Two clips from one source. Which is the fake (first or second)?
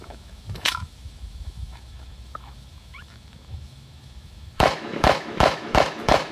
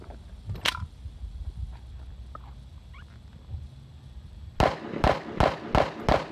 first